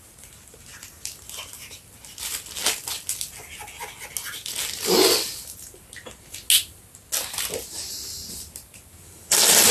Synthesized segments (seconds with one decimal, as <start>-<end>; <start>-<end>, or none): none